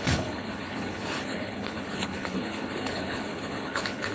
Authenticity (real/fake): fake